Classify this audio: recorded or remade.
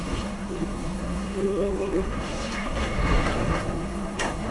remade